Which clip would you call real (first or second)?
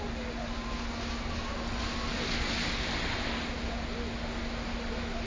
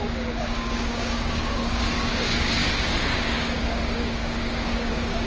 first